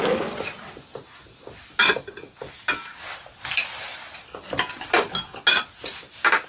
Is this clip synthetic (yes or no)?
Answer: no